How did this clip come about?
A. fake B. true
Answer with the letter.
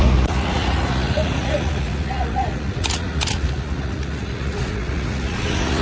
A